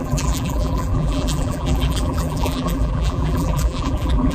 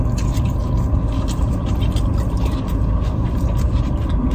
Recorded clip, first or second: second